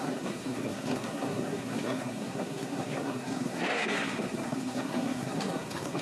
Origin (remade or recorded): remade